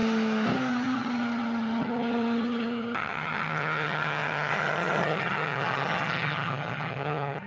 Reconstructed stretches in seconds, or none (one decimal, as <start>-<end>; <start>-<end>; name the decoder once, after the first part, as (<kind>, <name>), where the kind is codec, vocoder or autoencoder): 0.7-7.5 (vocoder, HiFi-GAN)